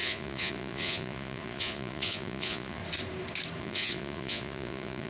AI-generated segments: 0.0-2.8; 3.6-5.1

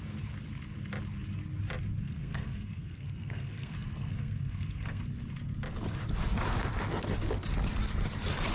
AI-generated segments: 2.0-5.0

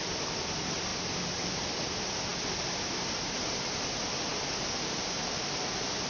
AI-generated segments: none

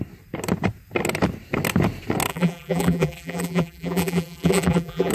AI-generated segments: 2.3-5.1

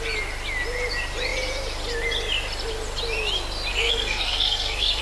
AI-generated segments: 3.7-5.0